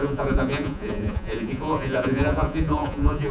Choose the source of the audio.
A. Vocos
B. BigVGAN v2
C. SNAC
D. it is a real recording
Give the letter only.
A